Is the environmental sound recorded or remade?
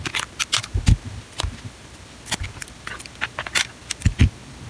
recorded